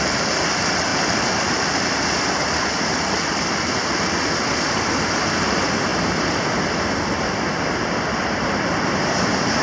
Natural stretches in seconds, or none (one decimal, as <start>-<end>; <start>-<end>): 0.0-0.9; 3.1-9.6